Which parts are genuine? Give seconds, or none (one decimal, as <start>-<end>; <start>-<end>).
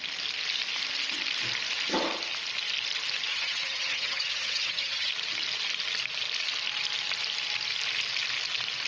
0.0-3.3; 5.1-8.9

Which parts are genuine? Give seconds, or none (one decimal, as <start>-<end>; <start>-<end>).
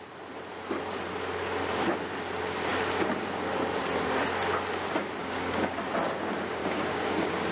0.0-5.2; 5.8-6.6